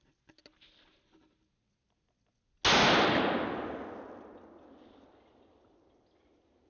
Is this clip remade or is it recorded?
recorded